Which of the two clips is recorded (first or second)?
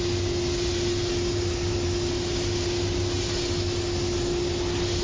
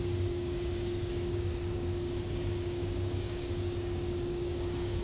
first